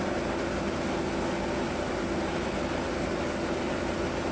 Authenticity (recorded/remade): recorded